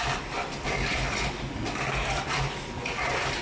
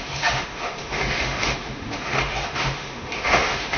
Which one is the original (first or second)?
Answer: first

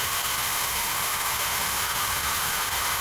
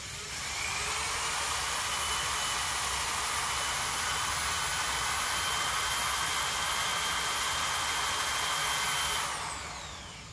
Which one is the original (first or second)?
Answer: second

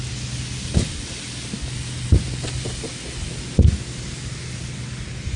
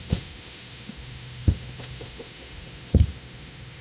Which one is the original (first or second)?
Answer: first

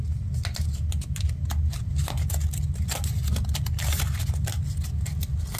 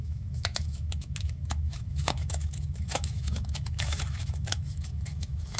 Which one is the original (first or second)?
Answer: first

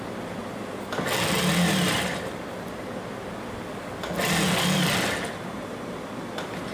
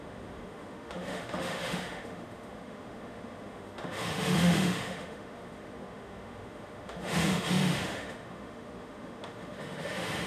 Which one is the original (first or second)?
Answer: first